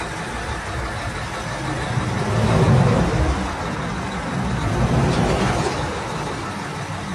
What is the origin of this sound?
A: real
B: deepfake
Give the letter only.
A